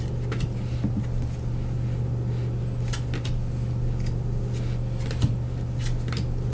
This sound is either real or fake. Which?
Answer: real